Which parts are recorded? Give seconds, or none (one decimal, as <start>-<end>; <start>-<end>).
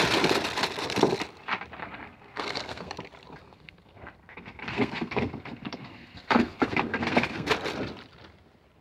0.0-1.8; 2.9-3.4; 7.5-8.8